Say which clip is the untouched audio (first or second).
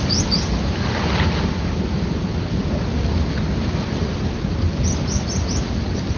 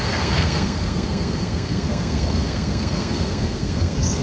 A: first